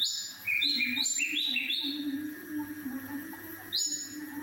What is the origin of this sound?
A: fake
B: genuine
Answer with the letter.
B